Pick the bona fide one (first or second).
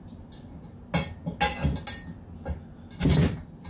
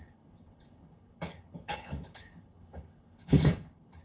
first